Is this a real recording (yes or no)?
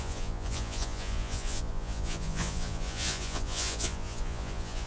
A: no